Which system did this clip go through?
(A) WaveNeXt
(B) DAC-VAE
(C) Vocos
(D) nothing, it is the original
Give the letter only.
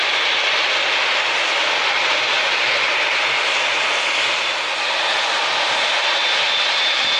D